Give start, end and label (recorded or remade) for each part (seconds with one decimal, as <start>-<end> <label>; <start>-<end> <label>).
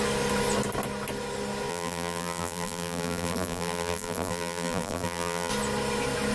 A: 0.0-1.7 recorded; 1.7-5.5 remade; 5.5-6.3 recorded